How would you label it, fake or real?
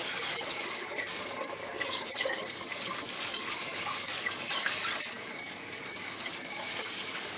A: fake